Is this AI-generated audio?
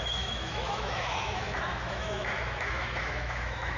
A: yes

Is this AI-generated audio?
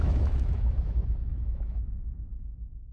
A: yes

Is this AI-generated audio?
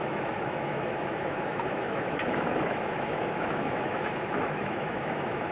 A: yes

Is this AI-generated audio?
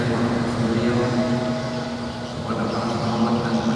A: no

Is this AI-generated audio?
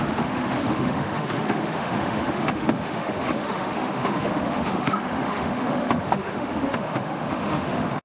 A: yes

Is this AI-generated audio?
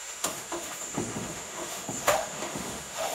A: yes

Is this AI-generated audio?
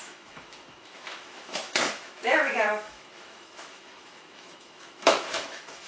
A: yes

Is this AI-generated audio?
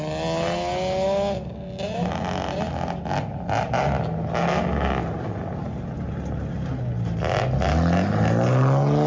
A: no